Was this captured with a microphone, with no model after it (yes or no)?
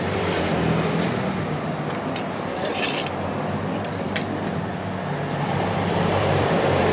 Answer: no